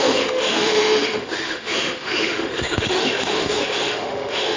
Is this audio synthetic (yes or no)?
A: yes